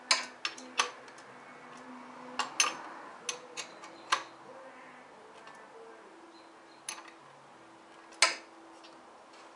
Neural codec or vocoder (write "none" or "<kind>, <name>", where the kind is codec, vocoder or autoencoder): none